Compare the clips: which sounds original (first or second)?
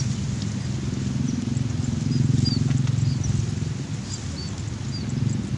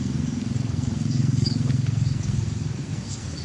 first